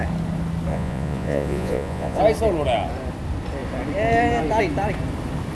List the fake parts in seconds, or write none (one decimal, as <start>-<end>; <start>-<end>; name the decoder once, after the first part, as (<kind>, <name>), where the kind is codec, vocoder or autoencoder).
0.7-2.2 (vocoder, Vocos)